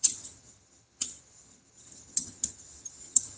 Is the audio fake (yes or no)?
yes